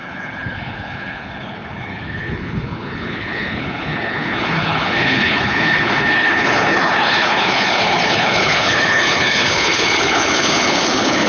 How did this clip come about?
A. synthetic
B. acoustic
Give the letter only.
A